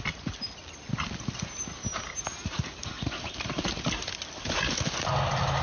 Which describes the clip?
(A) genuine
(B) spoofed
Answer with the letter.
A